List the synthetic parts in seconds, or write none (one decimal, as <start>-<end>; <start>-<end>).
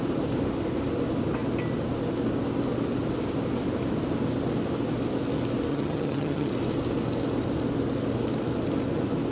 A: 5.7-6.5